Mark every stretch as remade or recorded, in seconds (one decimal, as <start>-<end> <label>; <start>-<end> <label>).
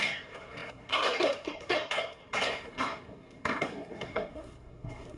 0.0-5.2 remade